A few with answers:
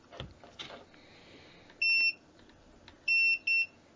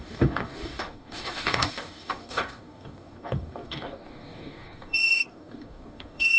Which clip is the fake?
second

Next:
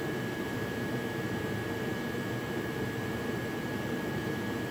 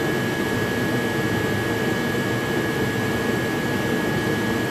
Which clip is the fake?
first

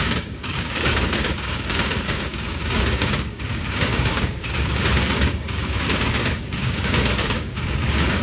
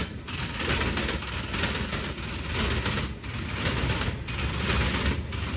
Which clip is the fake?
first